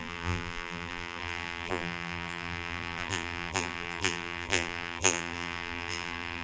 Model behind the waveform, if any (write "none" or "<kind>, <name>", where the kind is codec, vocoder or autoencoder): vocoder, BigVGAN v2